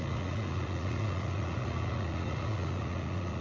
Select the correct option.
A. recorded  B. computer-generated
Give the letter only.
B